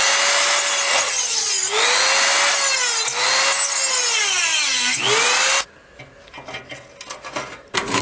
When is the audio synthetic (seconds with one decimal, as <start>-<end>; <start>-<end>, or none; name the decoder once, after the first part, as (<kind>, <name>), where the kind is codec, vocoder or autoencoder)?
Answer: 0.9-1.5 (vocoder, HiFi-GAN)